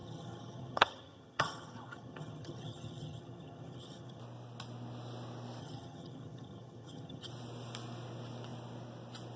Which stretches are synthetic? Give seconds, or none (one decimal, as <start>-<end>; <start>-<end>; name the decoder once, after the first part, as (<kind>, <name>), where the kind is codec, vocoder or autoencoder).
0.0-4.2 (vocoder, HiFi-GAN); 5.6-7.3